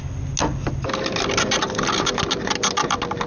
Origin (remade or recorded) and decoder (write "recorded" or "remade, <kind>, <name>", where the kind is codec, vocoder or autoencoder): recorded